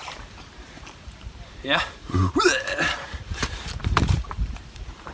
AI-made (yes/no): yes